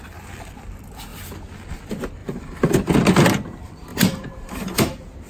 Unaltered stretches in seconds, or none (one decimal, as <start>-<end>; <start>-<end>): 0.0-2.2; 2.9-3.9; 4.8-5.3